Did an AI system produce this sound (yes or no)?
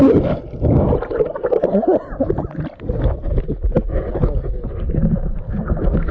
no